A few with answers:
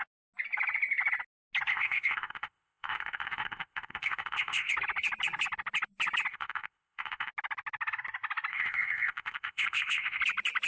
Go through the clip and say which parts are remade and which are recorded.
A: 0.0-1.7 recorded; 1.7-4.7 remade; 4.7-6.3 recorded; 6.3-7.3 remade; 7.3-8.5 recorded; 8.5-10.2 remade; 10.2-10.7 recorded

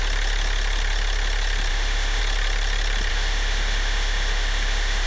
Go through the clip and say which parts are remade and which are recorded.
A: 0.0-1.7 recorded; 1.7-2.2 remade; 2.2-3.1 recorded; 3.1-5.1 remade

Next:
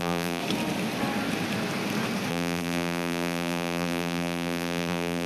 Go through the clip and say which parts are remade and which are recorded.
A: 0.0-0.4 remade; 0.4-2.3 recorded; 2.3-5.3 remade